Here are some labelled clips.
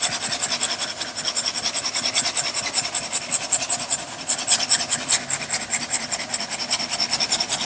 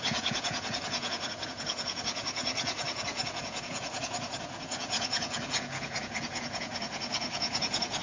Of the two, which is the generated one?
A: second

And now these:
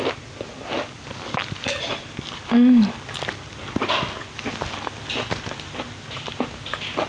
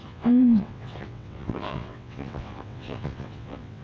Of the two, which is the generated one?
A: second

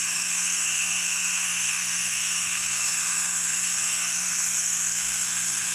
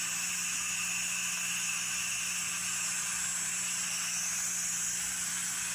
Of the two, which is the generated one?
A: first